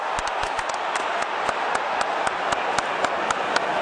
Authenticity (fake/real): real